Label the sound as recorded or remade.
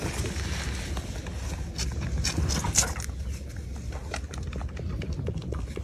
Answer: recorded